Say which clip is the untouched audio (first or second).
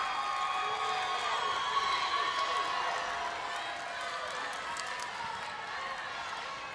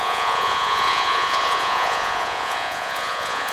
first